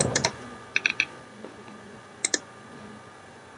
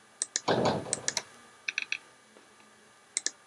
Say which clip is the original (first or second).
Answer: second